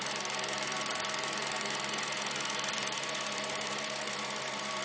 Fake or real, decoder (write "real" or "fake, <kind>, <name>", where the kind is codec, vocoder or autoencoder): fake, vocoder, BigVGAN v2